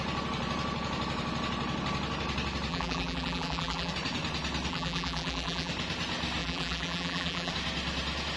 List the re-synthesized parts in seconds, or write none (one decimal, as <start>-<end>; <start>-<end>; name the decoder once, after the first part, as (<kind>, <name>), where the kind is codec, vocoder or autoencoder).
2.7-3.9 (vocoder, BigVGAN v2); 4.7-5.7; 6.4-7.5